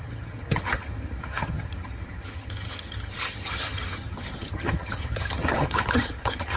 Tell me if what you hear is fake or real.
fake